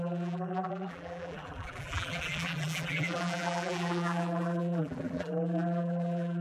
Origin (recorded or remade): remade